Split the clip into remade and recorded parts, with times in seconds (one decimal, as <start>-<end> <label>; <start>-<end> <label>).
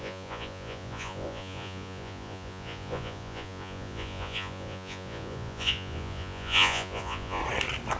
0.0-7.4 remade; 7.4-8.0 recorded